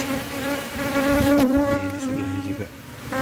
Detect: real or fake fake